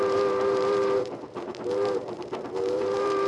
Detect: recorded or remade remade